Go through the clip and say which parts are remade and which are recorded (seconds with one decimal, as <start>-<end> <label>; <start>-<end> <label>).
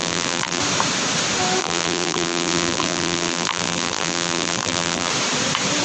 0.0-0.6 remade; 0.6-1.6 recorded; 1.6-5.1 remade; 5.1-5.8 recorded